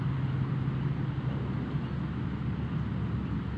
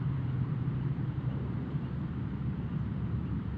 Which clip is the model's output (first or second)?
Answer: second